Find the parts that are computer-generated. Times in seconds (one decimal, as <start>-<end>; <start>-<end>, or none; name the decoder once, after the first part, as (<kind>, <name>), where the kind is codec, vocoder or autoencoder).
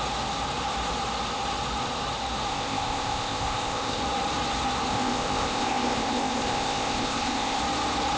2.5-4.0 (codec, ZipCodec); 4.9-7.6